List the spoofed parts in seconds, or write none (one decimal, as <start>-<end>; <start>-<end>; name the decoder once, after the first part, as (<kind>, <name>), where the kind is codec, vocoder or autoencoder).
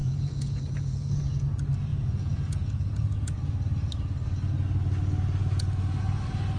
0.0-1.2 (vocoder, Vocos); 1.9-3.3; 5.4-6.0